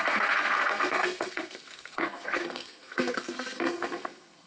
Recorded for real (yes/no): no